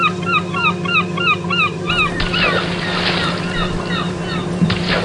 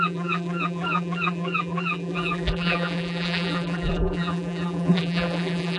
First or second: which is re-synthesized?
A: second